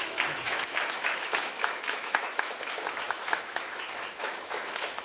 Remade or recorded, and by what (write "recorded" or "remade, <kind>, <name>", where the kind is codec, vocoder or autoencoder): remade, autoencoder, DAC-VAE